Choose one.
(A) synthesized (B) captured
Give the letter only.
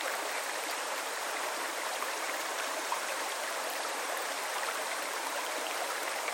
A